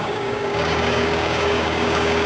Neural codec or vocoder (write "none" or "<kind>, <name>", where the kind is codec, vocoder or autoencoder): codec, DAC